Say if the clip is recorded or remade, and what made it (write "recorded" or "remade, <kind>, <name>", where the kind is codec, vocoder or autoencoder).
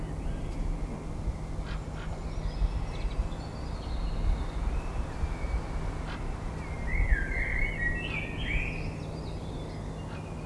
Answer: recorded